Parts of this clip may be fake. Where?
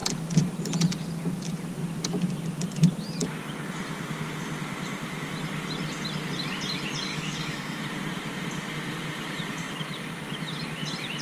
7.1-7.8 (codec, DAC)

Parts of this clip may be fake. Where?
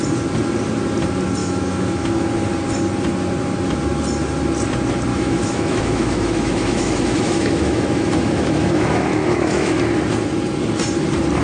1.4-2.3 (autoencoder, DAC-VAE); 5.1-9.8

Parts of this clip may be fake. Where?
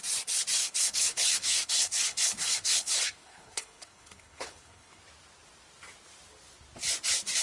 0.6-5.0 (codec, HILCodec)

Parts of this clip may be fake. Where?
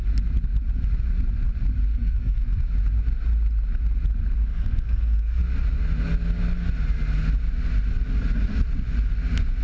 1.9-2.6 (codec, SNAC); 4.5-5.4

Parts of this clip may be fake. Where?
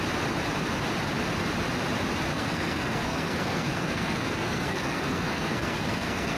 2.3-6.4 (codec, SNAC)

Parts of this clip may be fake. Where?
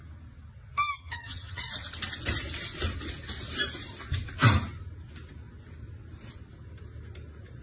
1.0-1.6 (vocoder, HiFi-GAN)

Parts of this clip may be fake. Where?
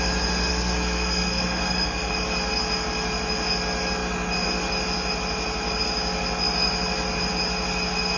0.5-2.1 (codec, SNAC)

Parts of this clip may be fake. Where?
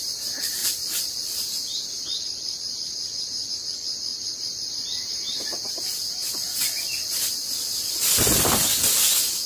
0.6-3.5 (vocoder, BigVGAN v2)